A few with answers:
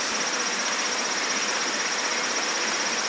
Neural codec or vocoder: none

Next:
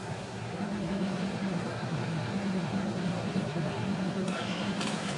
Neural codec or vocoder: codec, SNAC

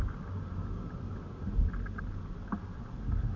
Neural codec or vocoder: none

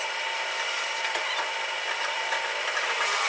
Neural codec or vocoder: vocoder, BigVGAN v2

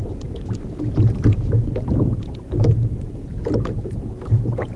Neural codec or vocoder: vocoder, BigVGAN v2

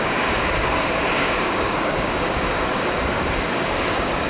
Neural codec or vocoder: codec, DAC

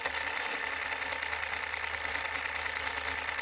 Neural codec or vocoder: vocoder, BigVGAN v2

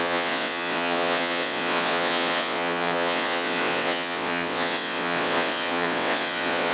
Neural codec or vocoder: vocoder, WaveNeXt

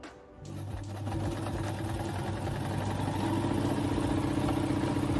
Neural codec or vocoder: none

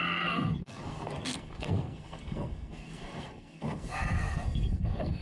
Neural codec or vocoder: codec, SNAC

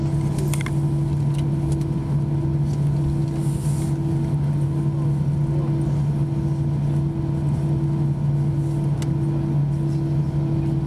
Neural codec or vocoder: none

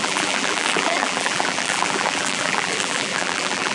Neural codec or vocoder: vocoder, BigVGAN v2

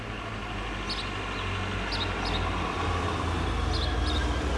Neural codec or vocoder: none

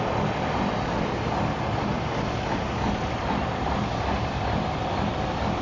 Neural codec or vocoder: none